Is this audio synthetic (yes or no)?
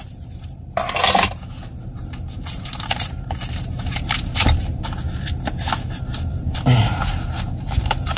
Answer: yes